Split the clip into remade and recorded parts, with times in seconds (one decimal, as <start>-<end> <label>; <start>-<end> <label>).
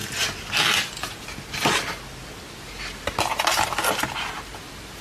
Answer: 0.0-5.0 recorded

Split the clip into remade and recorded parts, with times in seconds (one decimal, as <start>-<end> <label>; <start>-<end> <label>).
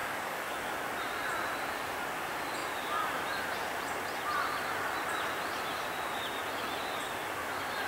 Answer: 0.0-0.7 remade; 0.7-7.9 recorded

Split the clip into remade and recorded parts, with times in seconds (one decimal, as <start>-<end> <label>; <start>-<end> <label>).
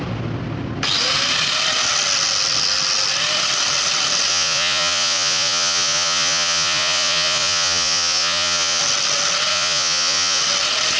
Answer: 0.0-4.3 recorded; 4.3-8.8 remade; 8.8-9.5 recorded; 9.5-10.4 remade; 10.4-11.0 recorded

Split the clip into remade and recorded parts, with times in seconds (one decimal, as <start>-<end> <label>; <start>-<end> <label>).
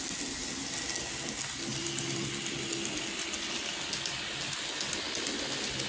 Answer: 0.0-5.9 recorded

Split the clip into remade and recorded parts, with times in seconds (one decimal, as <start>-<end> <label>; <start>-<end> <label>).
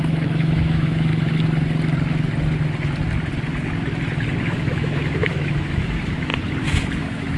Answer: 0.0-1.1 remade; 1.1-4.4 recorded; 4.4-6.3 remade; 6.3-7.0 recorded; 7.0-7.4 remade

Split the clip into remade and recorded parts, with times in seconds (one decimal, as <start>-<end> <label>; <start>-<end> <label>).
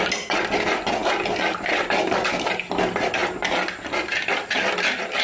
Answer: 0.0-5.2 recorded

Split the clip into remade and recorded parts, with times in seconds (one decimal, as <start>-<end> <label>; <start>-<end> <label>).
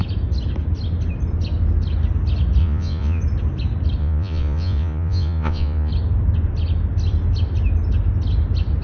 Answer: 0.0-2.6 recorded; 2.6-3.2 remade; 3.2-4.0 recorded; 4.0-5.9 remade; 5.9-8.8 recorded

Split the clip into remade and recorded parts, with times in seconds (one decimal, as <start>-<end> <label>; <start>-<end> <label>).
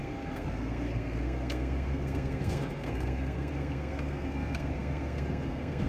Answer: 0.0-5.9 remade